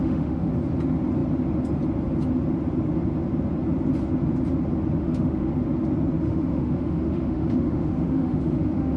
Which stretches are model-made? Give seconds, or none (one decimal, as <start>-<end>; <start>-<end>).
0.0-0.5; 5.0-5.5; 6.2-9.0

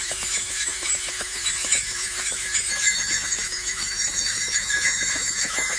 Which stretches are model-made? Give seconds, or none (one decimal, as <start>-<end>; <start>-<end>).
0.0-5.8

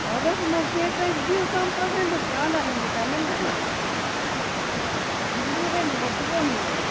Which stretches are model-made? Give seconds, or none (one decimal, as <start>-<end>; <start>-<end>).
2.7-3.5

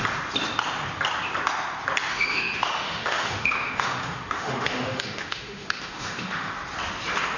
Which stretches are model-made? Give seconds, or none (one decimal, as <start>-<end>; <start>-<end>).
2.1-6.5

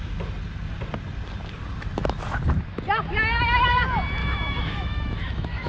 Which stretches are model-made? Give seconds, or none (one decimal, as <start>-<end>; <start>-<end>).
4.2-5.7

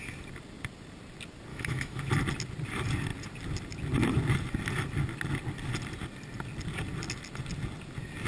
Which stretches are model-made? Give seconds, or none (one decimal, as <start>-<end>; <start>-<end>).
1.5-2.1

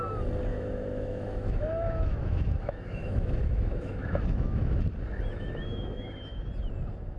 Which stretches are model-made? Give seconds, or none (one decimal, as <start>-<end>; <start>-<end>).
0.5-4.8; 5.3-6.5